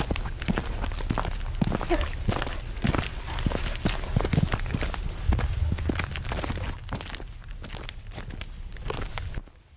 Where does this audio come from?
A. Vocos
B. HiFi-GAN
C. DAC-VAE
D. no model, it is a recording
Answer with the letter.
D